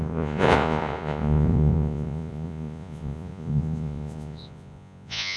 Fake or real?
fake